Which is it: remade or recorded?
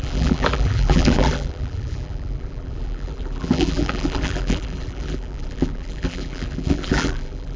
remade